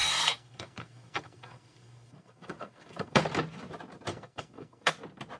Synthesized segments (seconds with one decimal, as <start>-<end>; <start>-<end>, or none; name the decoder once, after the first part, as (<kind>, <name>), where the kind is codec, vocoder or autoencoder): 0.0-3.2 (codec, SNAC); 4.1-4.9